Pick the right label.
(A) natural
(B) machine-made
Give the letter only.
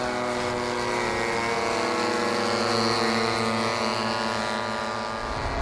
A